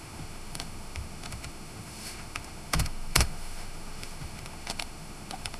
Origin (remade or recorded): remade